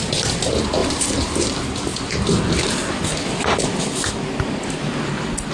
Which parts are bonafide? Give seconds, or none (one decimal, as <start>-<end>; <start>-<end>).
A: 0.0-0.8; 1.5-5.5